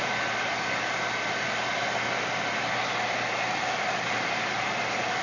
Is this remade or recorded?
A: recorded